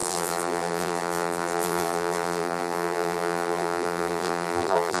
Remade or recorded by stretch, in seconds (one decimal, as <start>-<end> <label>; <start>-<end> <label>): 0.0-5.0 remade